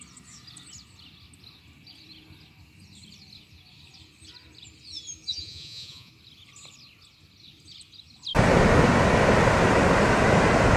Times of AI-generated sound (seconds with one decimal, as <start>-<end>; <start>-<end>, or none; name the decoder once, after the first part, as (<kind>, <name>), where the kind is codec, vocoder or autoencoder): 5.3-6.1 (vocoder, Vocos)